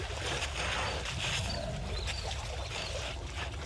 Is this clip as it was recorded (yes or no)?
yes